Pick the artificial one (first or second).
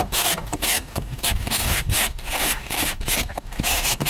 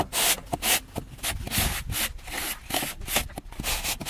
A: first